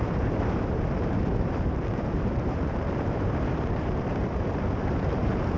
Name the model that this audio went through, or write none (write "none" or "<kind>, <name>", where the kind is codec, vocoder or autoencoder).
vocoder, BigVGAN v2